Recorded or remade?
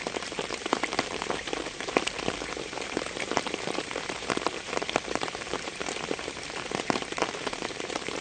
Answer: remade